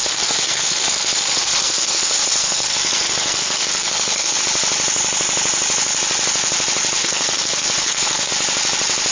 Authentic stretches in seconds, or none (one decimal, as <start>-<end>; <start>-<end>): 4.4-7.0; 8.3-9.1